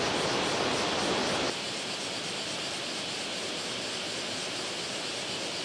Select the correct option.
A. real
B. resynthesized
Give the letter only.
A